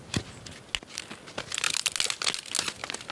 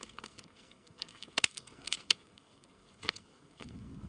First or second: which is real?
first